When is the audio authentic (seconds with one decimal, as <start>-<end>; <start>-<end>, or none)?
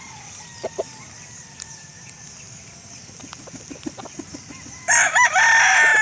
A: 0.0-6.0